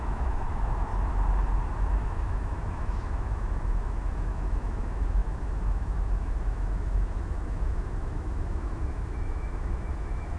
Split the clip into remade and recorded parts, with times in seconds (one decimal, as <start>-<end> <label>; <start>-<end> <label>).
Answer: 0.0-0.9 remade; 0.9-1.7 recorded; 1.7-10.4 remade